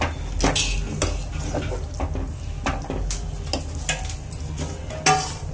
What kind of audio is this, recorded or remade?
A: recorded